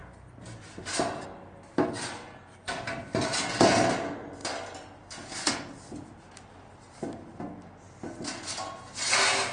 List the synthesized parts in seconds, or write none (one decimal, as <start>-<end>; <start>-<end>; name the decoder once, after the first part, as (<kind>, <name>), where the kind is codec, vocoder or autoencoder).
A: none